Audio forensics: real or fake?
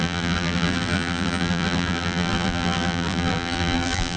fake